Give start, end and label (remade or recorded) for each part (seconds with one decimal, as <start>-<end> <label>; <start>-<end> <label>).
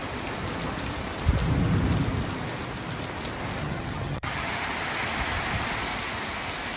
0.0-3.6 recorded; 3.6-4.5 remade; 4.5-6.8 recorded